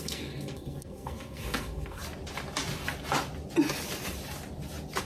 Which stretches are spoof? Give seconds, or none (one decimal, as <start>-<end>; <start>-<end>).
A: 0.0-2.0